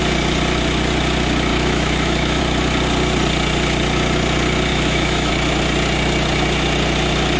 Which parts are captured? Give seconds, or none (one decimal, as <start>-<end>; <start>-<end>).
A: 0.0-1.5; 2.4-4.7; 5.3-7.4